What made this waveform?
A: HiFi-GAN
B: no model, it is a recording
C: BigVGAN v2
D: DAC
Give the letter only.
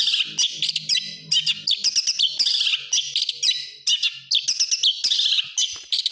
B